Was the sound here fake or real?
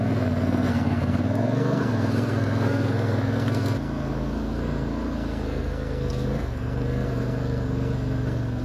fake